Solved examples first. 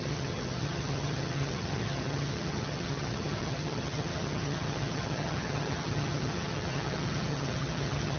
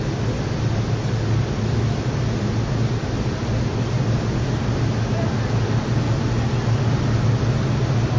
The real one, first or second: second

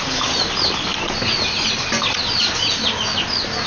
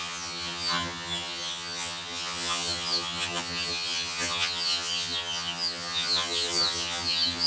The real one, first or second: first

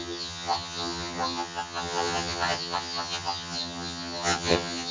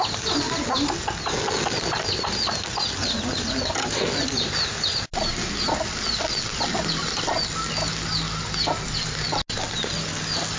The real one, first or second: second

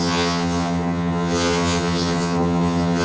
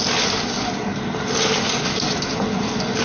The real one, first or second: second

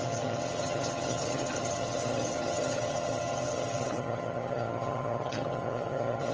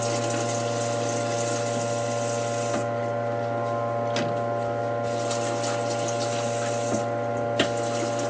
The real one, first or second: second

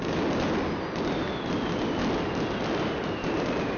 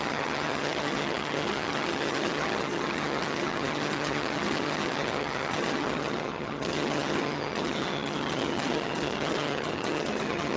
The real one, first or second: first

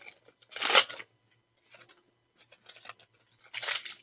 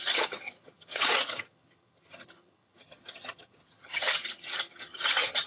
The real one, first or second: first